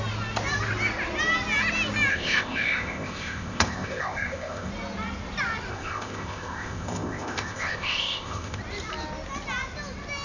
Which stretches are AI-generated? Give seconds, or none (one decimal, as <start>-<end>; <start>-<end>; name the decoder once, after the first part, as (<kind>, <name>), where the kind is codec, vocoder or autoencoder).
2.1-4.7 (codec, ZipCodec); 5.7-8.6